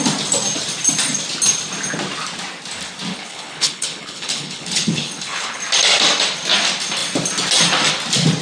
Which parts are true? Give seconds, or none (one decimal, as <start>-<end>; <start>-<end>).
0.0-3.1; 5.6-8.4